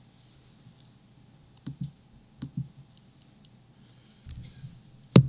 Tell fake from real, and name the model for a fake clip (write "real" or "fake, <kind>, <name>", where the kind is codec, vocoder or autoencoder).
real